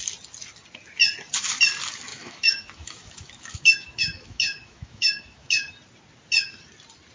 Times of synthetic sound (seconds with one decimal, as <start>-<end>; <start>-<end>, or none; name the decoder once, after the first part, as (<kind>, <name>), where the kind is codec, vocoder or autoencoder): 2.1-5.7 (autoencoder, DAC-VAE)